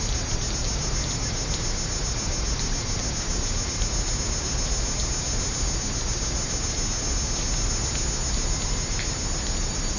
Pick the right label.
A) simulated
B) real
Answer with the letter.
B